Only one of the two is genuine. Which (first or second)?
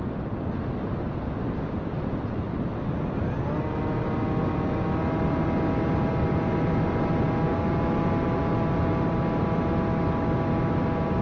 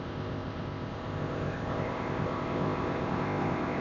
first